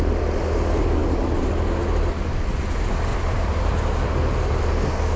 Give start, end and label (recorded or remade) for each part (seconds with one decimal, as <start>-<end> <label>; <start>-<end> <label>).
0.0-3.1 recorded; 3.1-4.1 remade; 4.1-5.2 recorded